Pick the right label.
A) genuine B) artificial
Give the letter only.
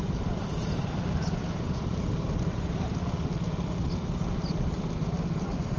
B